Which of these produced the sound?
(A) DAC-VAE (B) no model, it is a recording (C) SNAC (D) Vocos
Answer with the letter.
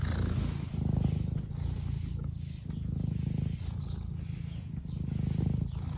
B